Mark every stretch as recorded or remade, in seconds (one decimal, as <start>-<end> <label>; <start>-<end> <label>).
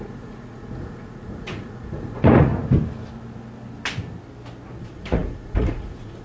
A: 0.0-2.5 remade; 2.5-4.8 recorded; 4.8-6.2 remade